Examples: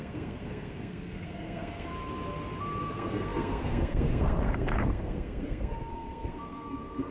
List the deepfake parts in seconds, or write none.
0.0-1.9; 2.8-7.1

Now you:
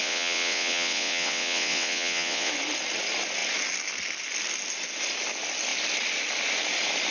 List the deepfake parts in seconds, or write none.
0.0-2.5

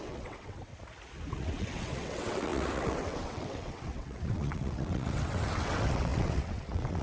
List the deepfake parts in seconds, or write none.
0.0-0.7; 1.3-7.0

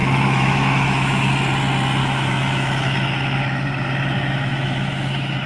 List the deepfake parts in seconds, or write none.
0.0-1.3; 2.0-5.5

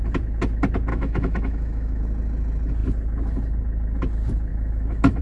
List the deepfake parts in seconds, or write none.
0.9-2.0; 4.5-5.2

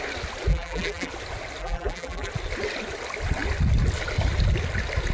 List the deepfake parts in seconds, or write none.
0.5-1.1; 1.6-2.3

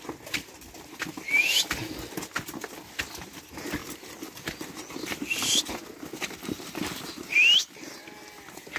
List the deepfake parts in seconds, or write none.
none

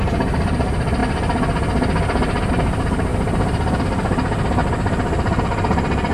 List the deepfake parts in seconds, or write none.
0.0-1.0; 2.5-3.1; 3.8-4.6; 5.4-6.1